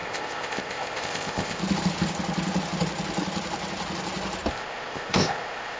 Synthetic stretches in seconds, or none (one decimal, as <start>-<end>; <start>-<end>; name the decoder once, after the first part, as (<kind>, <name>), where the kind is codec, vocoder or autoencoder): 0.0-1.6 (codec, ZipCodec); 4.5-5.8